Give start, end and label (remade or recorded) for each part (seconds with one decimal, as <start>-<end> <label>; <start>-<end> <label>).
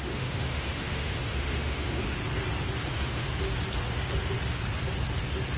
0.0-2.2 remade; 2.2-2.9 recorded; 2.9-3.3 remade; 3.3-5.6 recorded